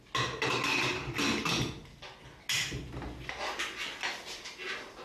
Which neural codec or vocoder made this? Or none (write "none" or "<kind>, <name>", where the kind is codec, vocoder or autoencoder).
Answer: none